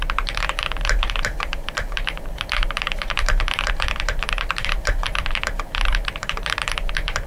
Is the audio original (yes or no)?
no